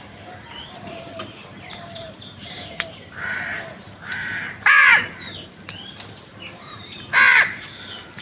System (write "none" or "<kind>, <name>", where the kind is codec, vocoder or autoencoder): vocoder, BigVGAN v2